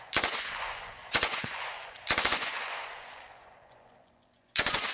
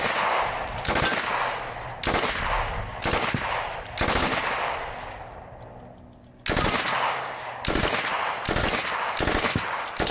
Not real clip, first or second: first